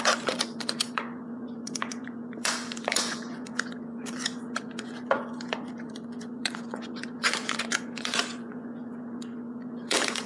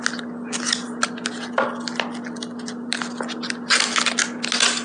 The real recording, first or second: second